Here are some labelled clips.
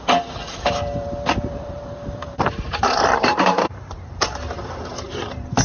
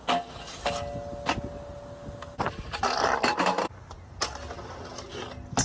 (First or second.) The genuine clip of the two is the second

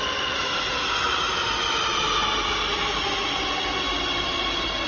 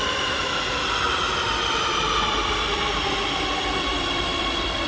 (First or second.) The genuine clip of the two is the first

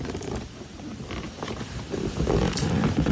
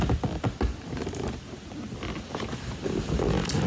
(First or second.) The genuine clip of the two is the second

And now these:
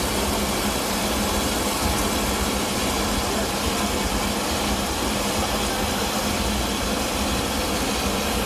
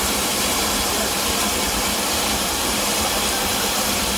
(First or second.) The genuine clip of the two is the first